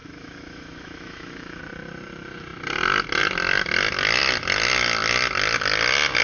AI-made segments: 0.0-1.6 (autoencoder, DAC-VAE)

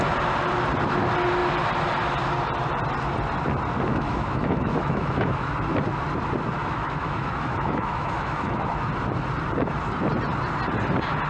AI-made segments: 3.9-5.5 (autoencoder, DAC-VAE); 6.6-8.6

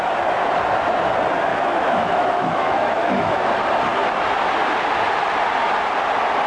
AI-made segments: 1.5-3.5 (autoencoder, DAC-VAE)

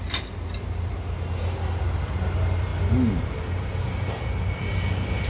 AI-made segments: none

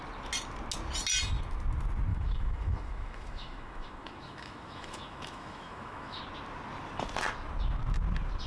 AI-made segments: 2.1-6.2 (autoencoder, DAC-VAE)

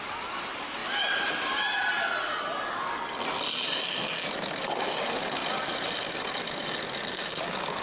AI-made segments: none

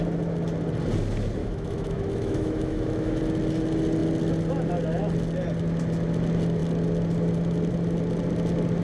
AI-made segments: 1.4-3.2 (autoencoder, DAC-VAE)

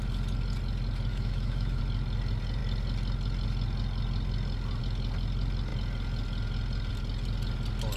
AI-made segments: 1.1-1.8 (autoencoder, DAC-VAE)